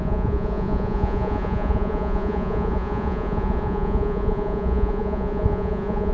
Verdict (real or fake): fake